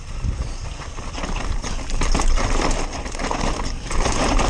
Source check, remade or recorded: remade